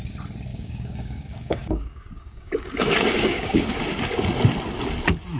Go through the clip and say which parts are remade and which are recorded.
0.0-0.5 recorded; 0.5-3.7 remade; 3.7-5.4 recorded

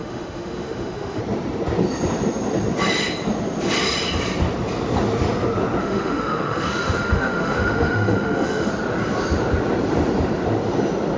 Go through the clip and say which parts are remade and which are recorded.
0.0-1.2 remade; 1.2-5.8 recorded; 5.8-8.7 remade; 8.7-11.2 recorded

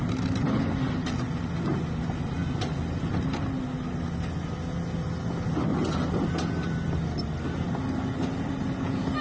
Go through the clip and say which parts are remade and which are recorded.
0.0-9.2 recorded

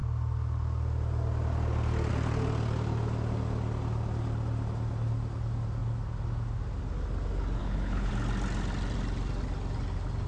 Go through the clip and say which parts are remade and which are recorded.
0.0-7.6 recorded; 7.6-8.1 remade; 8.1-10.3 recorded

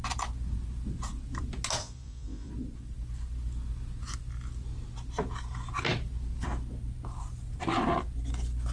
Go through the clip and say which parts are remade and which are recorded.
0.0-1.8 recorded; 1.8-2.5 remade; 2.5-8.7 recorded

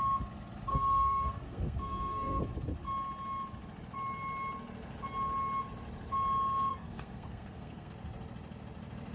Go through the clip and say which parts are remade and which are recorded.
0.0-0.7 recorded; 0.7-2.4 remade; 2.4-6.7 recorded; 6.7-7.9 remade; 7.9-9.1 recorded

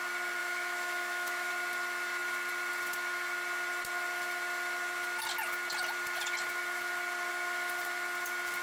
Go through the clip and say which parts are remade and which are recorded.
0.0-0.4 recorded; 0.4-1.5 remade; 1.5-8.6 recorded

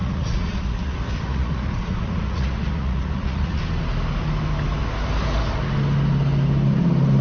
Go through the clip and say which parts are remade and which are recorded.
0.0-3.6 remade; 3.6-7.2 recorded